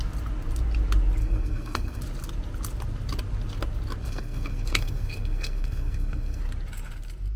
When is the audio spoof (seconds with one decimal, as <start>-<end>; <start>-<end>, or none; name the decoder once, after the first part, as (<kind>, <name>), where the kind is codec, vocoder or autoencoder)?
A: 1.2-2.0 (codec, SNAC); 4.0-6.4